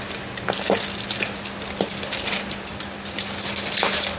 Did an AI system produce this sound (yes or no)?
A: no